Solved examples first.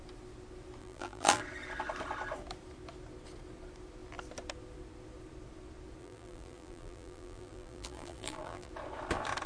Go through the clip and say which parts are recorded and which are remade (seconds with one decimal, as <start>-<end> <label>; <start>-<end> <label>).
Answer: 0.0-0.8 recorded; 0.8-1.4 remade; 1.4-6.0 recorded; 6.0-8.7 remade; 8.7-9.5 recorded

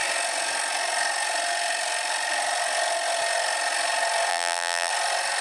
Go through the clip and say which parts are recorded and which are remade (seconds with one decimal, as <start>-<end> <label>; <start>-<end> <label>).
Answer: 0.0-4.3 recorded; 4.3-4.9 remade; 4.9-5.4 recorded

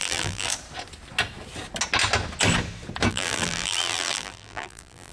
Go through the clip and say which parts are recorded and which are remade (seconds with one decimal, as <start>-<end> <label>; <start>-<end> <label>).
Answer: 0.0-0.5 remade; 0.5-3.1 recorded; 3.1-5.1 remade

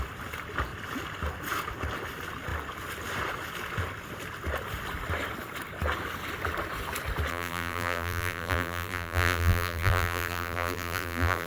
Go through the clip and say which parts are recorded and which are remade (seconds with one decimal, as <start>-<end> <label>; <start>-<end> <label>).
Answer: 0.0-7.3 recorded; 7.3-11.5 remade